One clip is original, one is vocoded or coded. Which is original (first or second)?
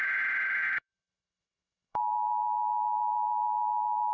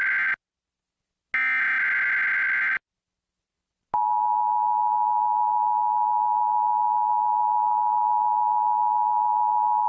second